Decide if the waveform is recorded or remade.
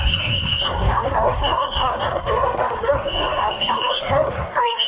remade